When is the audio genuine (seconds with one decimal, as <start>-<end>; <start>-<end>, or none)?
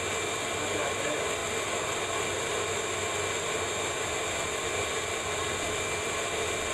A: 0.0-6.7